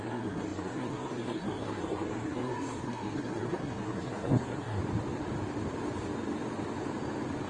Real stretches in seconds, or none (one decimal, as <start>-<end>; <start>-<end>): 4.8-7.5